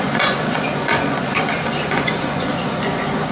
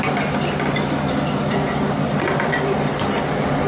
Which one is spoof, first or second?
first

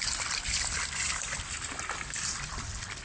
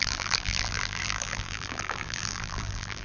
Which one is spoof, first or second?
second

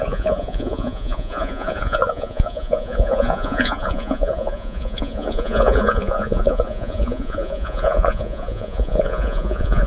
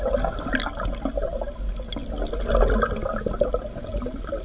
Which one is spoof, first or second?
first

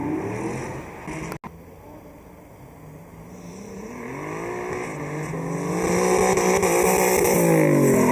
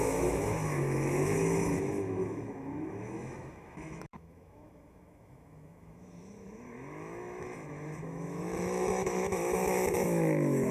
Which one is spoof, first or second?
second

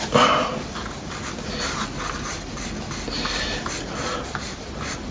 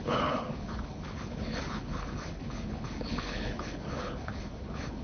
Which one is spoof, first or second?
second